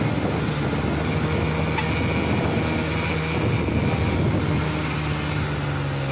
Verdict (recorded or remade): recorded